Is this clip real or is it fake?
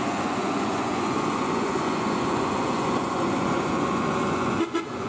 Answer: fake